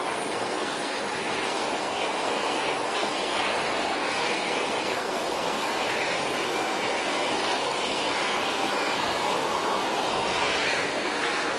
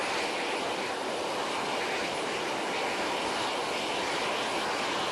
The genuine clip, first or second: second